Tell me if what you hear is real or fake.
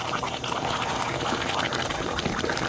real